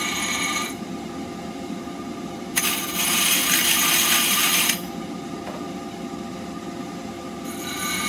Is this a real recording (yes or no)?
no